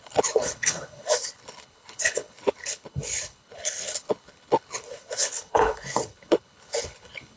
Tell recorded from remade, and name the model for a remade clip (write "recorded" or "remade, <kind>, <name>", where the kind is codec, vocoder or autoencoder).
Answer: remade, codec, HILCodec